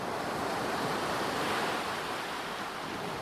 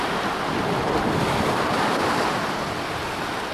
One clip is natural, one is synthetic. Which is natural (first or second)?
second